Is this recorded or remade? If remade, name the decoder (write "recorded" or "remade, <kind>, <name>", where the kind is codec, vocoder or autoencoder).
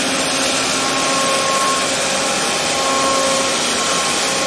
recorded